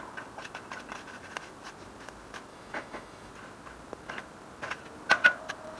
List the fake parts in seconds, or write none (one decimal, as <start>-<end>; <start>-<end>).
2.5-3.3